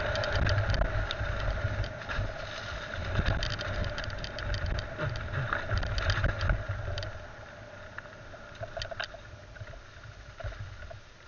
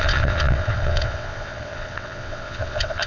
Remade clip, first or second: second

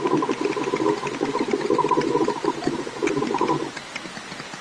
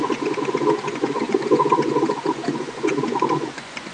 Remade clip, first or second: second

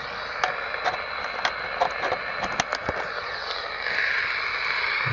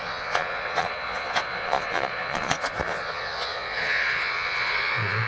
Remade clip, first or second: second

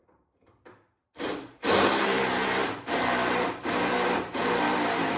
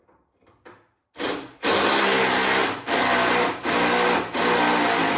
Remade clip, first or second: first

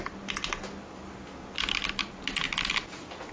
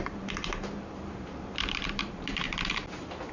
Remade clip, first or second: second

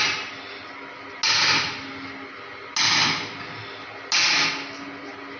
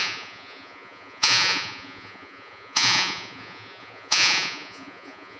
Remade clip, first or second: second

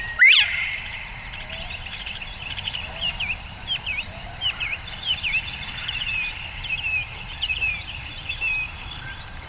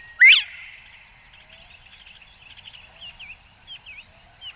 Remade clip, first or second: first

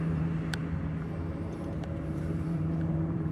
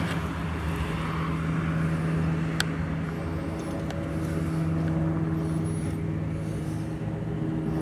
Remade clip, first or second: first